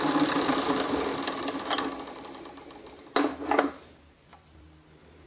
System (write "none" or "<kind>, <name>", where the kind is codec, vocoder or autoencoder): vocoder, BigVGAN v2